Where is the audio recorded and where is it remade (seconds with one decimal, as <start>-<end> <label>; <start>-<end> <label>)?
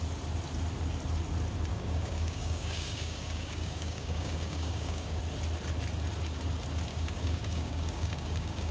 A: 0.0-1.7 recorded; 1.7-5.2 remade; 5.2-6.9 recorded; 6.9-8.7 remade